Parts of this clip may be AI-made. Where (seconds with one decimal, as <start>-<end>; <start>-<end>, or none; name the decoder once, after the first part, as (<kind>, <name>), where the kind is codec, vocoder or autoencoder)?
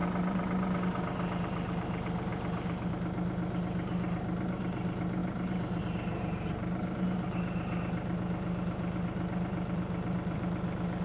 0.0-0.8 (vocoder, BigVGAN v2); 2.3-2.9